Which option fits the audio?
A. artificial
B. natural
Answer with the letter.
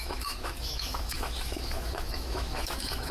A